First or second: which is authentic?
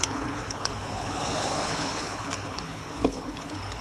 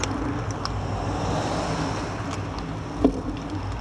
second